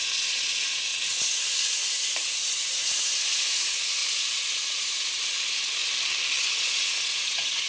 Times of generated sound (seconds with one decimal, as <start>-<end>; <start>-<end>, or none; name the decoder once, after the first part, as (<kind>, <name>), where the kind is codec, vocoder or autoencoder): 0.0-5.8 (vocoder, Vocos); 6.4-7.7